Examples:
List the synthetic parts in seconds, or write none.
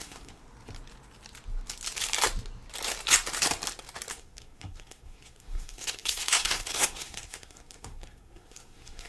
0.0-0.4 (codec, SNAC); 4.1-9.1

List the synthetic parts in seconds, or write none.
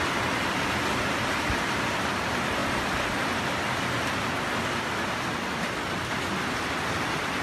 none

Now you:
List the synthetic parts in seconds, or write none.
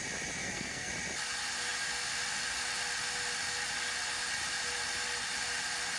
0.4-0.9 (codec, SNAC)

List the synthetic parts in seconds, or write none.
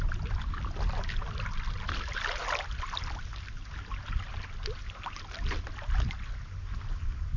none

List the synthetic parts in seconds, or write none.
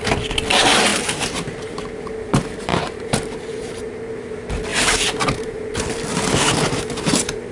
0.9-2.0 (vocoder, BigVGAN v2); 2.7-3.8; 4.7-6.0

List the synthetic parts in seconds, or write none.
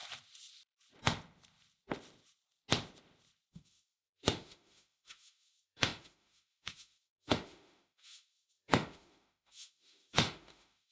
3.5-10.9 (autoencoder, DAC-VAE)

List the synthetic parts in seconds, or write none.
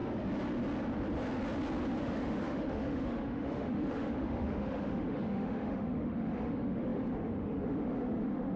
2.0-8.6 (autoencoder, DAC-VAE)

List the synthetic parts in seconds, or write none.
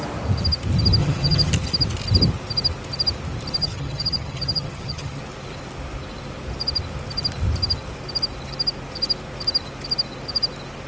1.0-1.5 (vocoder, HiFi-GAN); 3.6-5.2